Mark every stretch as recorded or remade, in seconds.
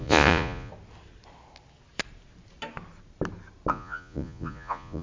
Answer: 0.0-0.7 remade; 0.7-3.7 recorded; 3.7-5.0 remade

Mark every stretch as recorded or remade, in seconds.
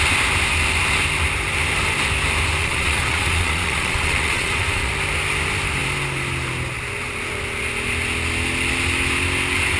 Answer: 0.0-2.6 recorded; 2.6-4.9 remade; 4.9-9.8 recorded